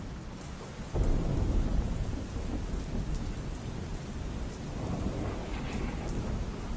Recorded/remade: recorded